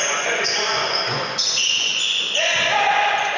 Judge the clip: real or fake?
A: fake